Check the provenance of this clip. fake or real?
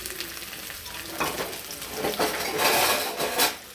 real